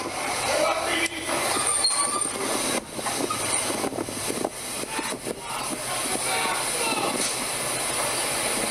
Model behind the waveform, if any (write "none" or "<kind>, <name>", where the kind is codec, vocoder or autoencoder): none